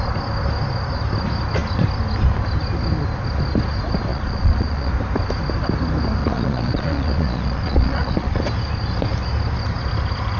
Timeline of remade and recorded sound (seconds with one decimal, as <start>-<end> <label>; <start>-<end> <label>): 0.0-4.1 recorded; 4.1-4.9 remade; 4.9-6.2 recorded; 6.2-8.4 remade; 8.4-10.4 recorded